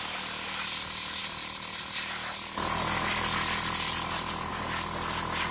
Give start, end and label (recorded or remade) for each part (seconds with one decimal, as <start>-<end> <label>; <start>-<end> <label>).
0.0-5.5 recorded